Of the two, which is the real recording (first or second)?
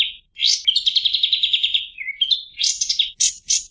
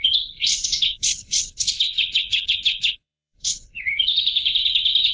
first